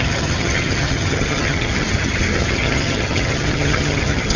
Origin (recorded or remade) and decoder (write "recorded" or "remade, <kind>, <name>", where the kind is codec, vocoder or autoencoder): remade, vocoder, HiFi-GAN